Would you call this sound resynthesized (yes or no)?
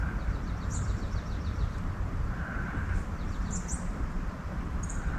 yes